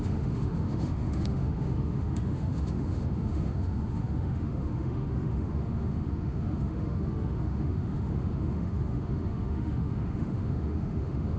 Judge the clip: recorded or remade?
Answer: remade